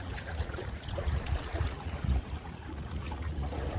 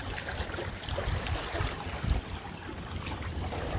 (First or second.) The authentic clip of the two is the second